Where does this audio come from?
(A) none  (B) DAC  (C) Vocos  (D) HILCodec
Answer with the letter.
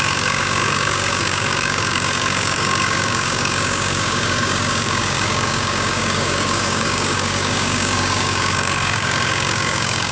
B